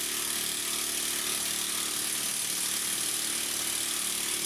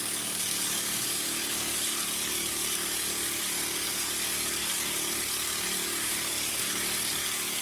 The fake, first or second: second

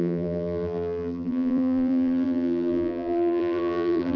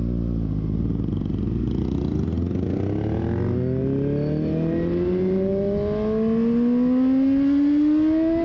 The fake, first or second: first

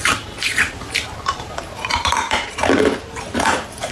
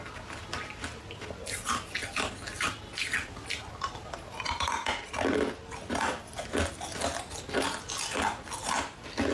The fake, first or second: first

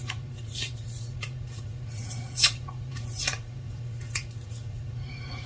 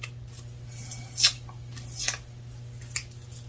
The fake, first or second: first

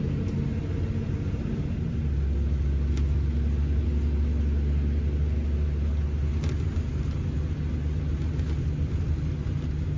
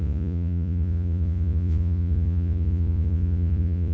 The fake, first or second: second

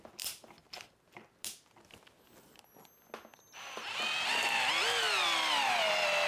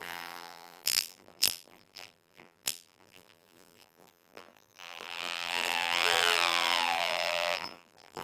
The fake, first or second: second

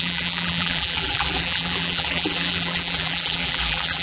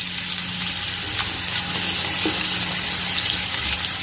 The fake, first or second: first